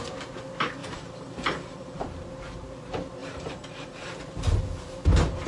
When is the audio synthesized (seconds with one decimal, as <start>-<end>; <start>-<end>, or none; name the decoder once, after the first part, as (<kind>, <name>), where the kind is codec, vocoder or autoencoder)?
0.8-2.0 (vocoder, BigVGAN v2); 3.2-4.1